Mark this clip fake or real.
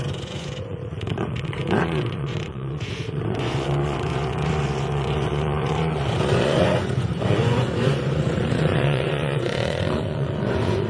fake